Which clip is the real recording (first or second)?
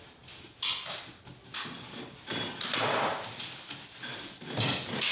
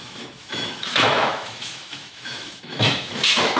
first